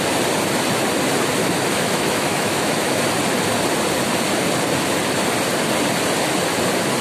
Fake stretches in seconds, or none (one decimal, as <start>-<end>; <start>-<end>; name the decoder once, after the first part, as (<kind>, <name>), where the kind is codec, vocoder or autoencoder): 1.4-3.0 (autoencoder, DAC-VAE)